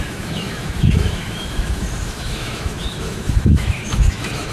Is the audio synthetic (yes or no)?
yes